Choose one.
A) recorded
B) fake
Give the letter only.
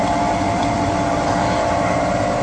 B